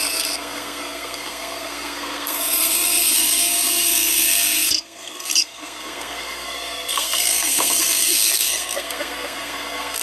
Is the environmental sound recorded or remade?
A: remade